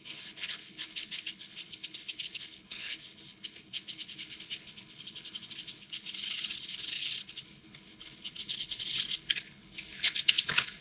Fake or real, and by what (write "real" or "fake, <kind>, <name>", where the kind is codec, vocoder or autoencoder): fake, codec, HILCodec